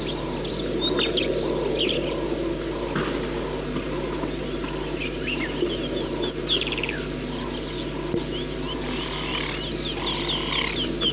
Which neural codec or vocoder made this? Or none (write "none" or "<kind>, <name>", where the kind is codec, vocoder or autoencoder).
none